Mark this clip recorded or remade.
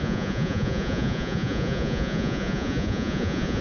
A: remade